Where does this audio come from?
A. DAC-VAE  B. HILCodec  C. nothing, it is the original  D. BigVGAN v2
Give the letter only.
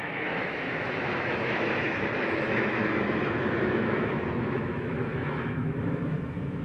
A